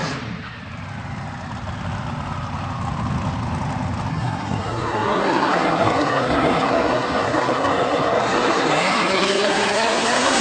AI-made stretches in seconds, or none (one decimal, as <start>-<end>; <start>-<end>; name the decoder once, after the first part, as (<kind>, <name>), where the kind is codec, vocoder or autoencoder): 4.1-10.4 (codec, SNAC)